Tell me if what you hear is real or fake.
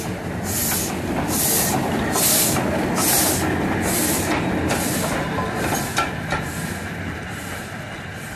real